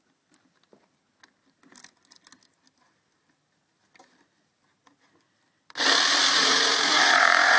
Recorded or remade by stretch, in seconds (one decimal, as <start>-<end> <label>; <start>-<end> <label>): 0.0-6.3 recorded; 6.3-7.6 remade